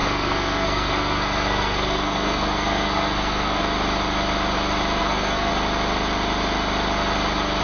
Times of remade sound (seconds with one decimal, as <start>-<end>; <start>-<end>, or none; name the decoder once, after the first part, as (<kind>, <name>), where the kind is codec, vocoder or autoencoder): 0.0-3.6 (codec, SNAC); 5.0-5.5